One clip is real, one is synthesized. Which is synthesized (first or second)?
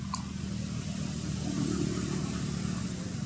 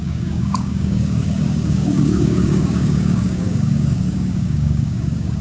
second